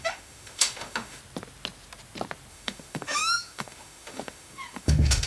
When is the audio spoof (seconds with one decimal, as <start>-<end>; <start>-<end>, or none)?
0.0-1.2; 2.5-5.3